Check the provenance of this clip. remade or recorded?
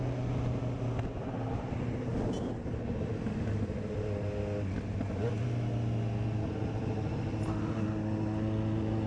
recorded